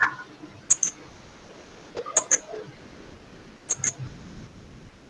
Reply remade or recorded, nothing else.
recorded